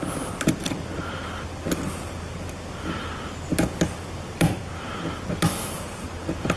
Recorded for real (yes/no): yes